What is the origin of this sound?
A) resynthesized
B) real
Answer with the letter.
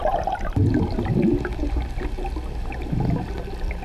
B